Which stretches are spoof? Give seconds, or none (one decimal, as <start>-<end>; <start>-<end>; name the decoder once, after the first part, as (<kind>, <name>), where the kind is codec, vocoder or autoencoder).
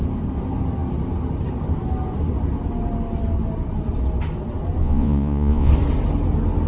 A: 4.8-5.7 (vocoder, Vocos)